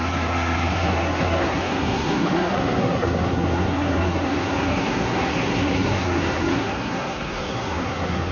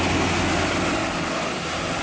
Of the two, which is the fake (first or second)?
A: first